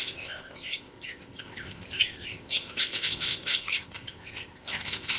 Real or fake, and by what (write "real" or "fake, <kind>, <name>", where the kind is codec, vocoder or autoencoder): fake, codec, ZipCodec